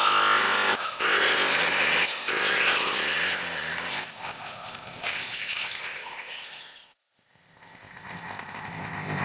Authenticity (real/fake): fake